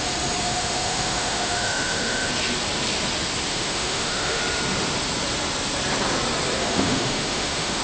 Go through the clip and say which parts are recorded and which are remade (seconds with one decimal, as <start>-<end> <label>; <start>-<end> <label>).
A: 0.0-0.4 recorded; 0.4-2.3 remade; 2.3-3.5 recorded; 3.5-4.4 remade; 4.4-6.6 recorded; 6.6-7.8 remade